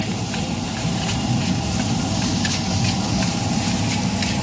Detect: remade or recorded recorded